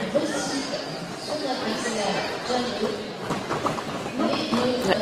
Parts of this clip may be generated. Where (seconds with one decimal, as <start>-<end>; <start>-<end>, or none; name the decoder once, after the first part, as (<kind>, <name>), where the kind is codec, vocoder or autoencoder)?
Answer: none